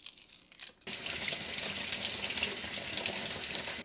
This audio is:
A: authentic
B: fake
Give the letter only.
A